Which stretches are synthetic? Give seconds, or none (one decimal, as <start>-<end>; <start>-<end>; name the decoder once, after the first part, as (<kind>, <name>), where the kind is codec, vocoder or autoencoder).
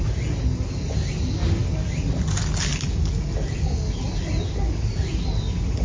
none